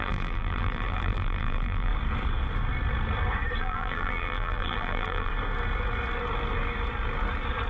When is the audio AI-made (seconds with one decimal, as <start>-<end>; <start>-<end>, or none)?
0.0-1.9; 3.6-5.3